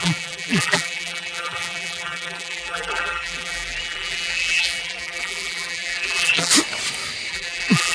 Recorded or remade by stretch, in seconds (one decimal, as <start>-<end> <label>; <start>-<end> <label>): 0.0-6.5 remade; 6.5-7.3 recorded; 7.3-7.9 remade